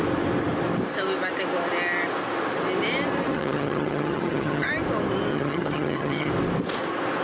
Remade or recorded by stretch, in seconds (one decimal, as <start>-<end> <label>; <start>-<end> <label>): 0.0-3.3 recorded; 3.3-4.7 remade; 4.7-5.3 recorded; 5.3-6.3 remade; 6.3-7.2 recorded